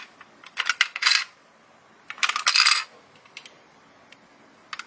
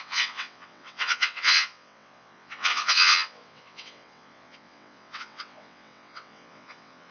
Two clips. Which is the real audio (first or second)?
first